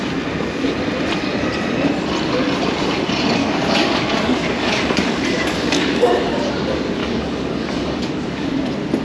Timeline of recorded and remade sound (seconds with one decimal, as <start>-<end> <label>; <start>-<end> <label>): 0.0-3.4 recorded; 3.4-6.5 remade; 6.5-7.0 recorded; 7.0-8.5 remade; 8.5-9.0 recorded

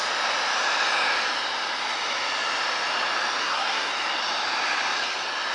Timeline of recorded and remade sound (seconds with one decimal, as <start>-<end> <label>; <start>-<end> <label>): 0.0-3.4 recorded; 3.4-3.9 remade; 3.9-5.5 recorded

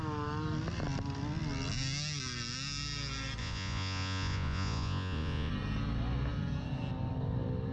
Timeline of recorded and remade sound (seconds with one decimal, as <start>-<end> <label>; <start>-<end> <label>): 0.0-3.4 recorded; 3.4-5.5 remade; 5.5-7.7 recorded

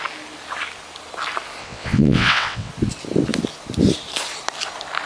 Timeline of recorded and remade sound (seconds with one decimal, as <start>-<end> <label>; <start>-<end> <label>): 0.0-1.6 recorded; 1.6-2.7 remade; 2.7-5.1 recorded

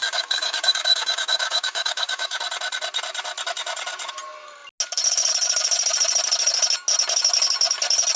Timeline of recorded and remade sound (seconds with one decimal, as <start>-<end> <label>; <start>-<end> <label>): 0.0-2.4 remade; 2.4-8.2 recorded